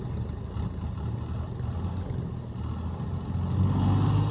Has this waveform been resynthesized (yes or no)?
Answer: no